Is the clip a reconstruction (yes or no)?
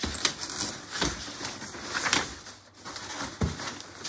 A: no